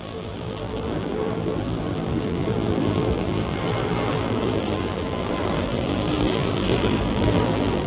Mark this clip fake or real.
fake